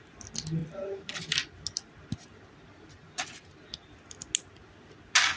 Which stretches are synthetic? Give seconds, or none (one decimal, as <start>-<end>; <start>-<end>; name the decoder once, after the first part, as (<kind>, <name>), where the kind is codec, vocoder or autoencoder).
0.6-1.2 (vocoder, BigVGAN v2); 3.0-3.5